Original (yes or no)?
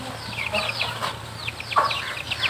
yes